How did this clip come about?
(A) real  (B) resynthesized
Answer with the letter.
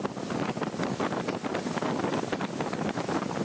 A